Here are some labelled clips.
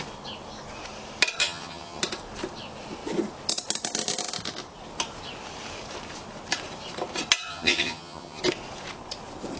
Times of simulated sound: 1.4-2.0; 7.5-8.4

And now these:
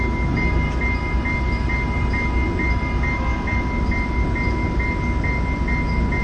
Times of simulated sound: none

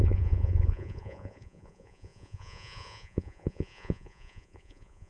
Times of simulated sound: 0.0-5.1

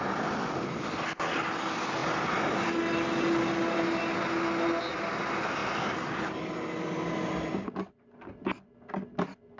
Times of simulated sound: 5.6-6.5

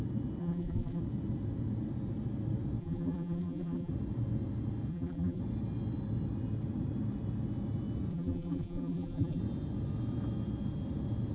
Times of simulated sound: 0.4-1.0; 2.8-3.9; 4.9-5.4; 8.1-9.4

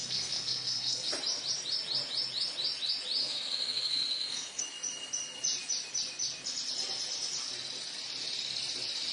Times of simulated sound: 0.0-1.1; 3.2-4.6

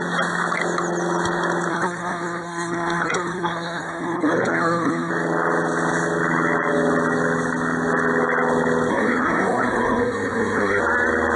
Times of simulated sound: 1.7-5.1; 8.9-10.8

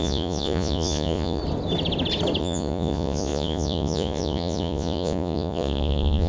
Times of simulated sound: 0.0-1.4; 2.4-6.3